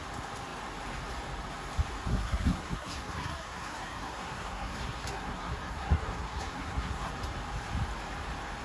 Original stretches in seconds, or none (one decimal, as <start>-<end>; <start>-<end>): 0.0-2.1; 7.1-8.6